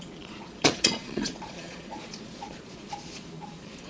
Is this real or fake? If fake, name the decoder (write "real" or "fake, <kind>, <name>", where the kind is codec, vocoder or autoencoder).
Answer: fake, vocoder, Vocos